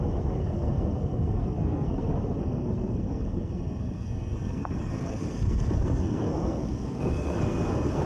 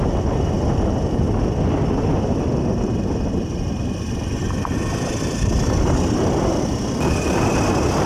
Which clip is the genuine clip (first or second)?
second